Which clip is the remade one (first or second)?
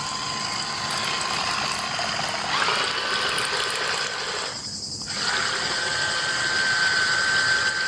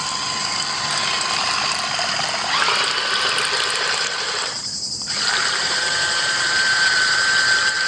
second